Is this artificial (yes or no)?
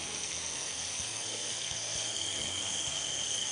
yes